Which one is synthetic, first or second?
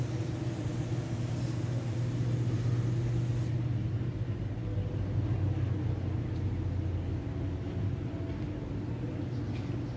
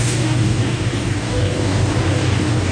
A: second